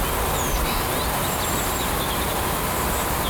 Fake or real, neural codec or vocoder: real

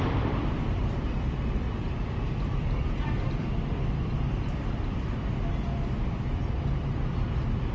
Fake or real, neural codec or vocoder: fake, vocoder, BigVGAN v2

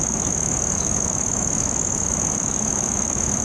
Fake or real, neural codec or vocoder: fake, autoencoder, DAC-VAE